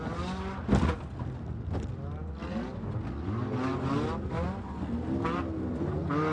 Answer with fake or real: real